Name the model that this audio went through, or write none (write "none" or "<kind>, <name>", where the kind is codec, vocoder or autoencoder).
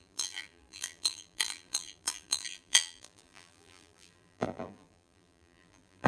vocoder, BigVGAN v2